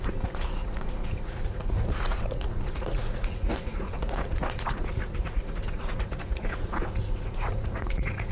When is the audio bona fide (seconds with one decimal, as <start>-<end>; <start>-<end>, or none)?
none